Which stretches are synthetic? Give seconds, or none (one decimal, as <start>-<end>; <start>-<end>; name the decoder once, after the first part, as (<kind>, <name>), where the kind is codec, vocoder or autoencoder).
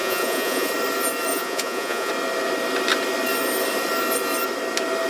0.0-0.7 (vocoder, Vocos); 1.3-2.1